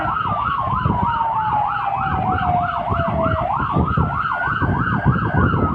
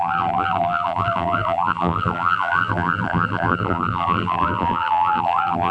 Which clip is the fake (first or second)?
second